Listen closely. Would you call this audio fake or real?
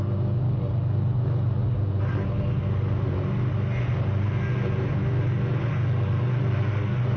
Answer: real